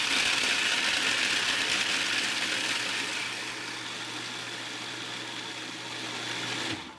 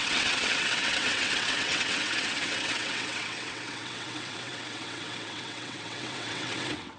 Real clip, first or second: first